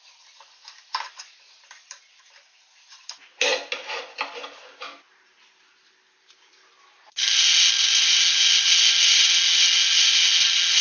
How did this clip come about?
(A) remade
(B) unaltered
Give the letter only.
B